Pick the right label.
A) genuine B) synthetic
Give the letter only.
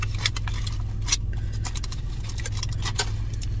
A